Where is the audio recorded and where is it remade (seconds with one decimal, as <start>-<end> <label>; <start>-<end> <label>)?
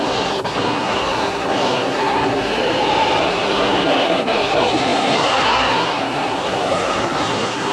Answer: 0.0-2.6 remade; 2.6-3.2 recorded; 3.2-7.7 remade